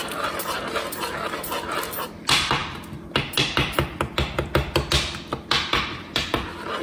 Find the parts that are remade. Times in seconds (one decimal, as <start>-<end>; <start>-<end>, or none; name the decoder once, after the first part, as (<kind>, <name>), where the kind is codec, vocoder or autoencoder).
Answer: none